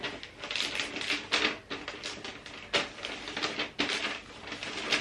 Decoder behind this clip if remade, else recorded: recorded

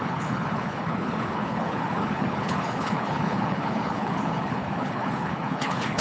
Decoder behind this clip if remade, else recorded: remade, codec, HILCodec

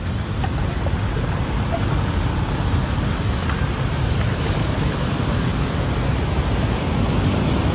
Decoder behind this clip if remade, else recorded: recorded